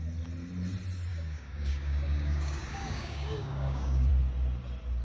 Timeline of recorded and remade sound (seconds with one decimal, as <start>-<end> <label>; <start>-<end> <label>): 0.0-1.1 recorded; 1.1-4.1 remade; 4.1-5.0 recorded